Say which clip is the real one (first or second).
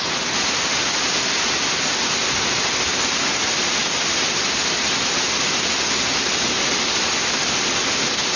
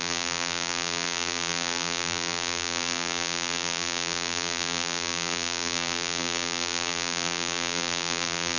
first